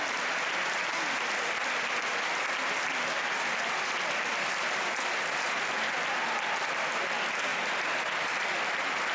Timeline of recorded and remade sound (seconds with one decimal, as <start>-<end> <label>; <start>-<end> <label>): 0.0-9.1 recorded